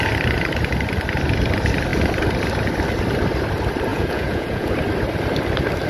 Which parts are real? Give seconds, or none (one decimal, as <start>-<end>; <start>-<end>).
0.0-3.9; 4.7-5.9